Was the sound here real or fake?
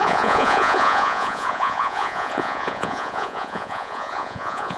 fake